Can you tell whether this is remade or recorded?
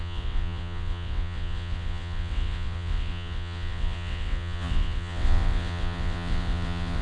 remade